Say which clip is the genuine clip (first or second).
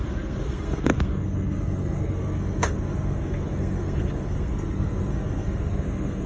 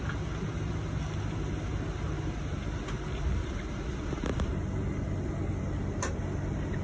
second